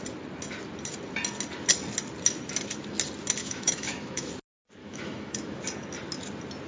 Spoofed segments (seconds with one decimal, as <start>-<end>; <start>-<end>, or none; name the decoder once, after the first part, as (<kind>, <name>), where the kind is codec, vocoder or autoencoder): 3.4-4.3 (autoencoder, DAC-VAE); 4.8-5.6